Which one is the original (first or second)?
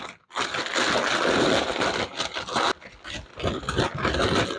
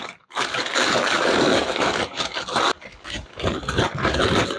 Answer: first